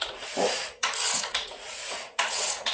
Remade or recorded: remade